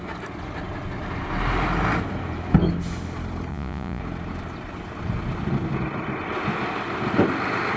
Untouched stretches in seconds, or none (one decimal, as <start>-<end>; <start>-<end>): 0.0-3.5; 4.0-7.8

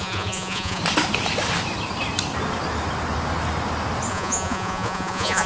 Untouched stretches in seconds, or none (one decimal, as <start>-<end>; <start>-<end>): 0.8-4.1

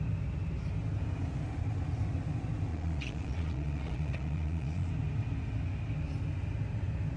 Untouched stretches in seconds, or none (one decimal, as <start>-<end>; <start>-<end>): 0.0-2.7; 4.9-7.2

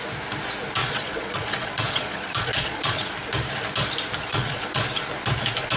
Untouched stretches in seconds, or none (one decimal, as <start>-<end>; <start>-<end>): 0.0-0.8; 3.1-4.2; 4.8-5.8

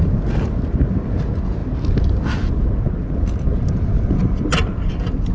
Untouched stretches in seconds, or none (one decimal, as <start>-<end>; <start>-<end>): 0.0-5.3

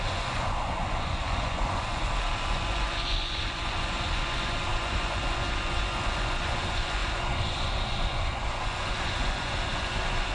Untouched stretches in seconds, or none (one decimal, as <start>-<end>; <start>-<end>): none